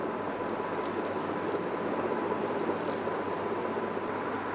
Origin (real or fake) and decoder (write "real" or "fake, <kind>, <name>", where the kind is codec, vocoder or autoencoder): real